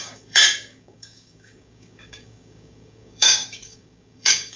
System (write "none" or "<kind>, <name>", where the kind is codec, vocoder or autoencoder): codec, DAC